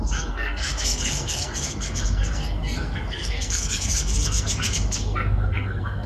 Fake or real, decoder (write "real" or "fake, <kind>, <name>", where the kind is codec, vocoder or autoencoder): fake, codec, SNAC